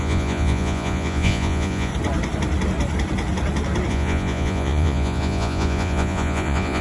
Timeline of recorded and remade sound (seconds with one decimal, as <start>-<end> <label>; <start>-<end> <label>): 0.0-1.9 remade; 1.9-3.9 recorded; 3.9-6.8 remade